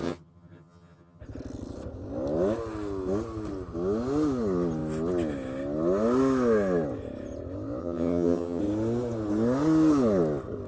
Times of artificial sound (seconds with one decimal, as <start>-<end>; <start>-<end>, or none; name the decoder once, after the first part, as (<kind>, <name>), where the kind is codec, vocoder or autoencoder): 0.0-1.2 (vocoder, HiFi-GAN); 7.8-8.6